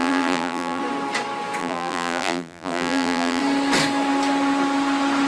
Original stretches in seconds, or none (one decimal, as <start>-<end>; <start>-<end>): 0.8-1.6; 3.4-5.3